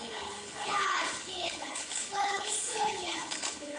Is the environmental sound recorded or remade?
remade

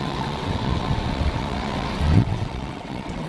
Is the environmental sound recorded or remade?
remade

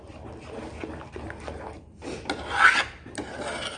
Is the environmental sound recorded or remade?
recorded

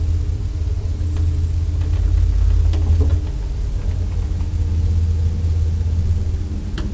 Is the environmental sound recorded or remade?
recorded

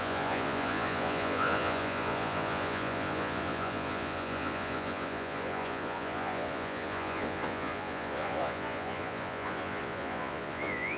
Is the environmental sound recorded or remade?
remade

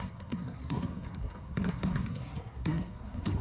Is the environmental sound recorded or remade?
remade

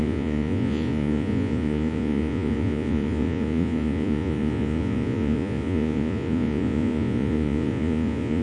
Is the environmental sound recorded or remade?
remade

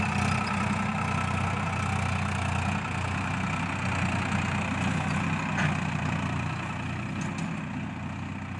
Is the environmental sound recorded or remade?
recorded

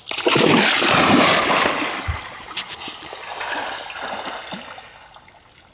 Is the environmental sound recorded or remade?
recorded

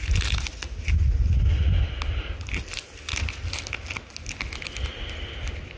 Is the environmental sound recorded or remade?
recorded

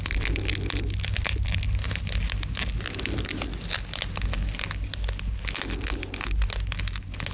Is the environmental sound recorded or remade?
recorded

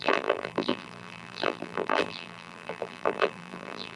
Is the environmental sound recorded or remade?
remade